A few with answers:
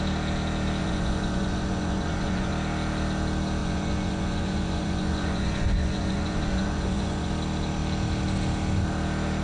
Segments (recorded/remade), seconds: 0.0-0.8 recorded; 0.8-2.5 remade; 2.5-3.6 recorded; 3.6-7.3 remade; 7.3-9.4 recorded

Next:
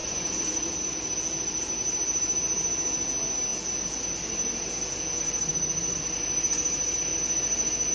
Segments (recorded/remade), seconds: 0.0-0.7 remade; 0.7-7.9 recorded

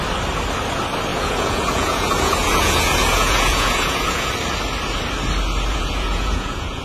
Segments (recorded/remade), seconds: 0.0-1.1 recorded; 1.1-4.3 remade; 4.3-5.7 recorded; 5.7-6.8 remade

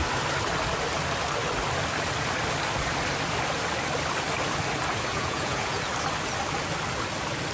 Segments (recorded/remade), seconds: 0.0-5.1 recorded; 5.1-5.9 remade; 5.9-7.5 recorded

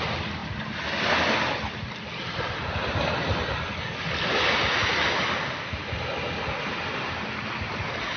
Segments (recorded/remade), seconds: 0.0-8.2 recorded